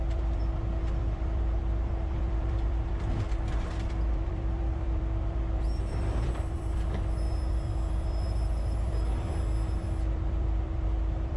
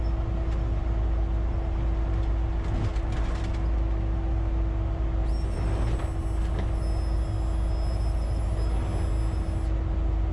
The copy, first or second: first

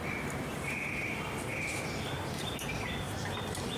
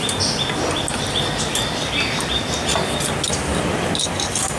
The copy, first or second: first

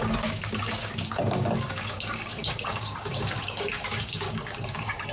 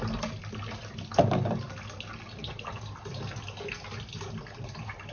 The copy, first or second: first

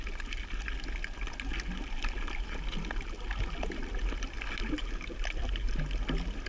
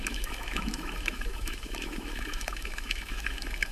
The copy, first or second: second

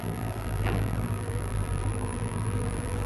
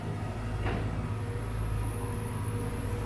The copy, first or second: first